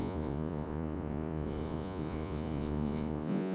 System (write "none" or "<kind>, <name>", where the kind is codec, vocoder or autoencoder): vocoder, Vocos